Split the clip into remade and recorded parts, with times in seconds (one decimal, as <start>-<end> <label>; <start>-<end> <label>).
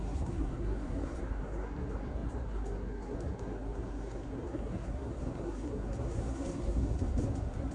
0.0-7.7 remade